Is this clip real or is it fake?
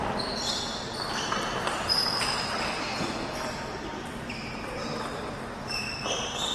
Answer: real